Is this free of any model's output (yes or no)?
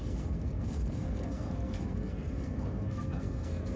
no